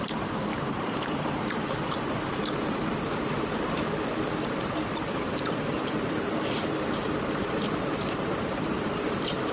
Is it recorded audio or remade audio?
remade